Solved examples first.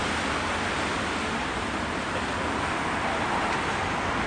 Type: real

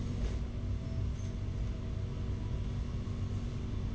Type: real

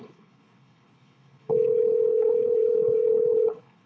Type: fake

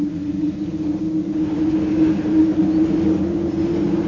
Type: real